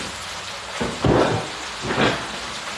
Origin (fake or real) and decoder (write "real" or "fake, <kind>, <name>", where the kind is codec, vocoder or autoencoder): real